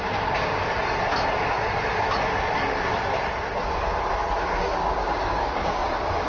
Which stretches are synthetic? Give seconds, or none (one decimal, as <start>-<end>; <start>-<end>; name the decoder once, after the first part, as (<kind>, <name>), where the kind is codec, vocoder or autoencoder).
0.0-0.6 (codec, DAC); 4.4-6.3